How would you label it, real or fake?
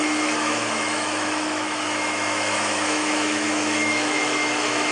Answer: fake